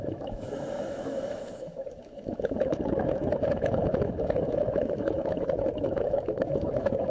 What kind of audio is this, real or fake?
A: fake